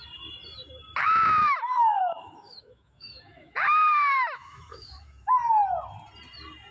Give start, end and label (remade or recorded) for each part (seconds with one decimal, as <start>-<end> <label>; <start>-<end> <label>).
0.0-1.4 recorded; 1.4-5.3 remade; 5.3-6.7 recorded